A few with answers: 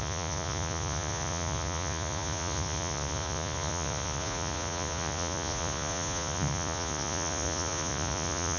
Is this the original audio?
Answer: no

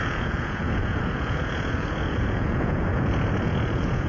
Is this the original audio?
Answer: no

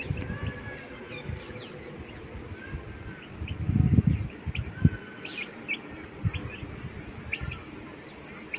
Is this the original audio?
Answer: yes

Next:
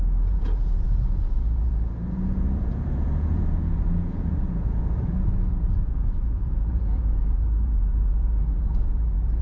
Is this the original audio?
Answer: no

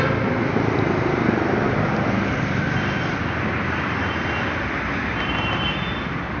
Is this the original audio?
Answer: yes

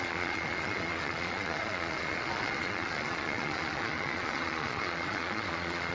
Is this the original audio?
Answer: no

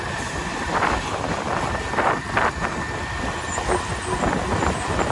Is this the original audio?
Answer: yes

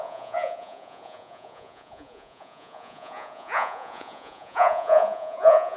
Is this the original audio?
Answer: no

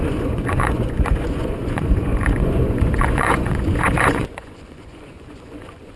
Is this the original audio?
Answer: no